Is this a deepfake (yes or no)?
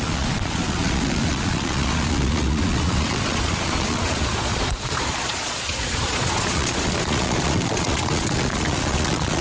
yes